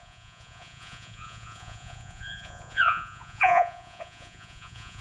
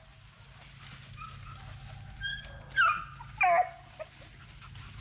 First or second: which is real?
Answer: second